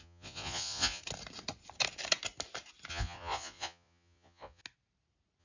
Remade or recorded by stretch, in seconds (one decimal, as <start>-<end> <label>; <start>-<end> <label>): 0.0-1.0 remade; 1.0-2.9 recorded; 2.9-4.6 remade; 4.6-5.4 recorded